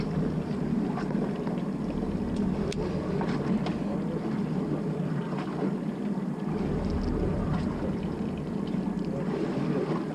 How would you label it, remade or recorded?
recorded